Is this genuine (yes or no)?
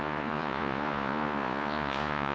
no